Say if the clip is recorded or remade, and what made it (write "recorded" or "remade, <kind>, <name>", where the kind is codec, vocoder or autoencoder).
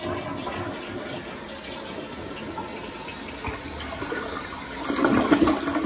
recorded